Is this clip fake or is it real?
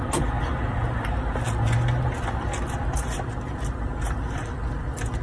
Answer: real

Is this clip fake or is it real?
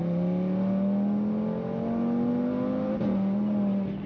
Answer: real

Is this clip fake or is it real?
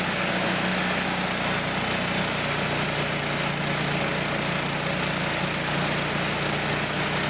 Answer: real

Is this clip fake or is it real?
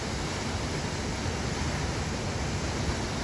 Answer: real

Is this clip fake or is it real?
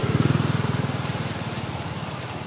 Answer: real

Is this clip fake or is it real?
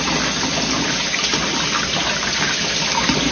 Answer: real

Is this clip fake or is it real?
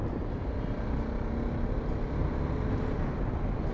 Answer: real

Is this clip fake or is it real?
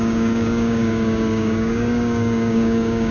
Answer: fake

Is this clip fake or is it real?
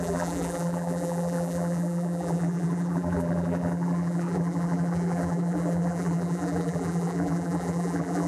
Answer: fake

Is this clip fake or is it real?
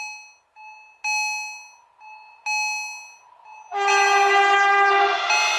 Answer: real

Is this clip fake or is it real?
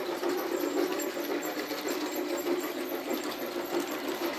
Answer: fake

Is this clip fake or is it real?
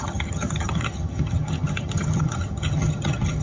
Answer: fake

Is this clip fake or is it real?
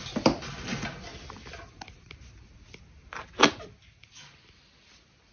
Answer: real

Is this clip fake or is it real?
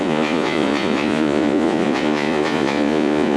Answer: fake